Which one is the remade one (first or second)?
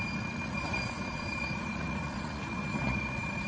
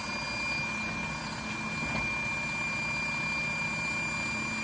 first